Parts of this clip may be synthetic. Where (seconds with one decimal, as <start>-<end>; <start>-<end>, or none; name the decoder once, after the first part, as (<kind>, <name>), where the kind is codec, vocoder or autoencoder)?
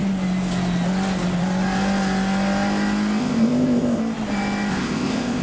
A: 3.2-4.0 (codec, ZipCodec); 4.7-5.4